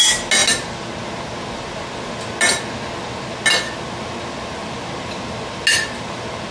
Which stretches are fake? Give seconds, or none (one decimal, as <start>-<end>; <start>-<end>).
none